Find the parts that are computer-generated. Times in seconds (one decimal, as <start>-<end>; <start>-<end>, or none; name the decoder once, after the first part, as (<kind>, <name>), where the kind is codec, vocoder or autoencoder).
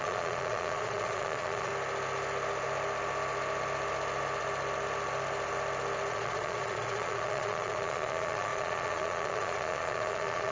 0.0-1.7 (vocoder, Vocos); 6.1-10.5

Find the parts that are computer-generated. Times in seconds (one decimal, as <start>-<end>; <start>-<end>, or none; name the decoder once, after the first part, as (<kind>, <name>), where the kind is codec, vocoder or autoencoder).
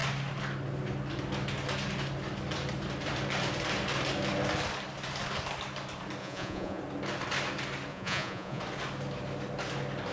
6.2-6.8 (vocoder, Vocos); 7.9-8.6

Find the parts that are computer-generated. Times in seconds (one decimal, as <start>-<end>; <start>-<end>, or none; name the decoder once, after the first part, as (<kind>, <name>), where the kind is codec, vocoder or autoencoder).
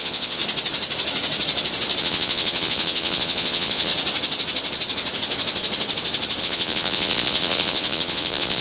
0.0-0.4 (vocoder, Vocos); 2.0-3.9; 6.4-8.6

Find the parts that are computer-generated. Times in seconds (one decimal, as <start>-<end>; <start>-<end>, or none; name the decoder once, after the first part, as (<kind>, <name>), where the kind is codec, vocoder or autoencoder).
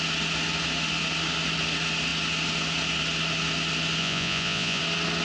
4.0-4.8 (vocoder, Vocos)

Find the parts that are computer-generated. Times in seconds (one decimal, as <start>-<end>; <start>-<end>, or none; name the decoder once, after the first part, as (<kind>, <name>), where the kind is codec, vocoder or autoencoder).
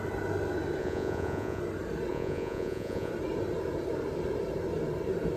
0.8-1.6 (vocoder, Vocos); 2.1-3.1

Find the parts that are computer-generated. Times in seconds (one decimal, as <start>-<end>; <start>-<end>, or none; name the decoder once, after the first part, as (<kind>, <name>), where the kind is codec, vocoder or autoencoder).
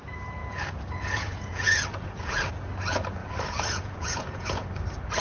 0.4-2.5 (vocoder, Vocos); 3.2-4.7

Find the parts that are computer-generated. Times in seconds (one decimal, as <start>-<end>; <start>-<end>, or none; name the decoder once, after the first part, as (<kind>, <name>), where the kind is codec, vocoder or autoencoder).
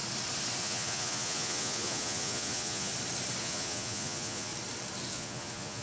0.6-2.9 (vocoder, Vocos); 3.4-4.5; 5.1-5.8